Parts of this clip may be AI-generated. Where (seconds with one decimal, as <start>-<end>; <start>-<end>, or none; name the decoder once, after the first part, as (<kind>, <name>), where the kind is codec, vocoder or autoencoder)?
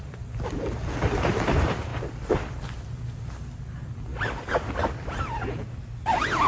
none